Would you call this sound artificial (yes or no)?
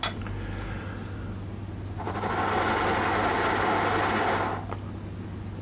no